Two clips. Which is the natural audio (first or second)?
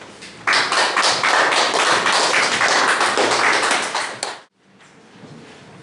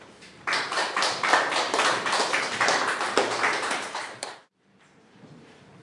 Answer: first